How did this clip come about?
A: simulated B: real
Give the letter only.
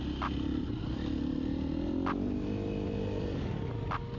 B